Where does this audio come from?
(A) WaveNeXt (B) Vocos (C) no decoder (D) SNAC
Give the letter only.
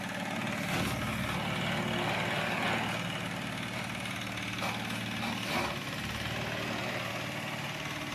C